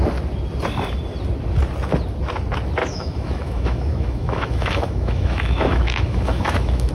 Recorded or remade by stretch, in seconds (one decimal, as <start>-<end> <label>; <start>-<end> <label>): 0.0-2.8 recorded; 2.8-6.9 remade